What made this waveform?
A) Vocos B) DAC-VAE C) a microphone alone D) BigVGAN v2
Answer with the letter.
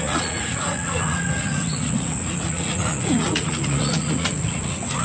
A